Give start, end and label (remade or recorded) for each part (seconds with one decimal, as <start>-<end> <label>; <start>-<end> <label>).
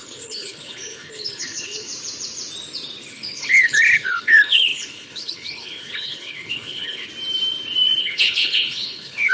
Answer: 0.0-1.9 remade; 1.9-3.1 recorded; 3.1-7.1 remade; 7.1-8.0 recorded; 8.0-9.3 remade